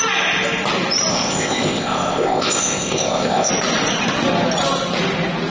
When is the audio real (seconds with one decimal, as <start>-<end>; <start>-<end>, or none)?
0.0-1.1; 3.5-5.5